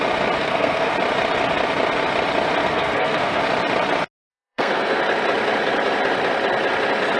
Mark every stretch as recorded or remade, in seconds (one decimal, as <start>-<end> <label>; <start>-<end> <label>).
0.0-0.4 recorded; 0.4-0.9 remade; 0.9-2.6 recorded; 2.6-3.4 remade; 3.4-4.3 recorded; 4.3-5.0 remade; 5.0-7.2 recorded